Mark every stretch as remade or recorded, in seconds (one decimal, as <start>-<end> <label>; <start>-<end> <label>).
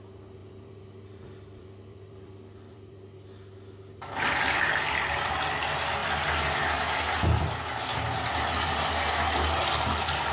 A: 0.0-0.4 recorded; 0.4-4.6 remade; 4.6-10.3 recorded